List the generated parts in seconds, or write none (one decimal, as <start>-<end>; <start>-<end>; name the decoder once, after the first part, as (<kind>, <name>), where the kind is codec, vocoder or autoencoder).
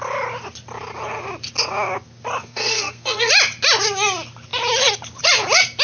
2.4-3.3 (codec, SNAC)